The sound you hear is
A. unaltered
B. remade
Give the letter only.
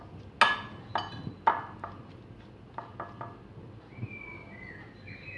A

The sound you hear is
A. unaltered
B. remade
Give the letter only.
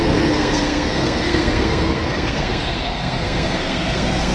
B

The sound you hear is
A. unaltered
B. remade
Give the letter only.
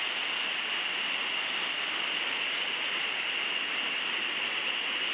A